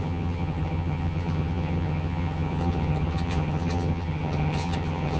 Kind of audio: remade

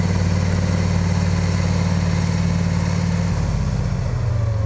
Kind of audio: recorded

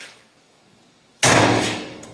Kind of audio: remade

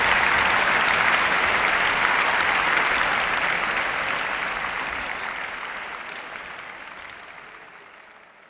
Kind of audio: recorded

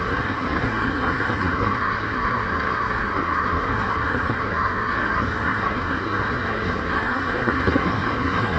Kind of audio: remade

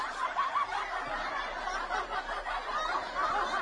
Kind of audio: recorded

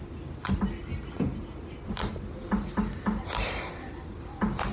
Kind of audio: recorded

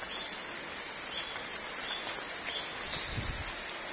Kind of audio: recorded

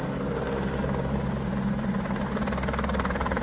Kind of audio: recorded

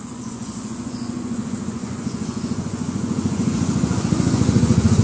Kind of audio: remade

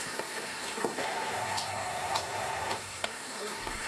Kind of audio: remade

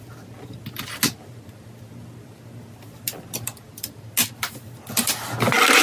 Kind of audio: recorded